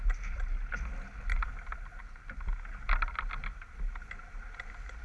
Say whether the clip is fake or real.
real